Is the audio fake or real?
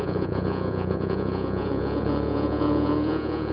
fake